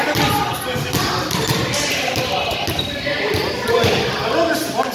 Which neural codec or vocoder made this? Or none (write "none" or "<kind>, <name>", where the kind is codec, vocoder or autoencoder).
none